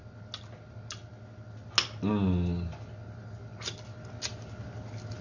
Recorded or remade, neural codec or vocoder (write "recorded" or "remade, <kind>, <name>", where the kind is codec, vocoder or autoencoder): recorded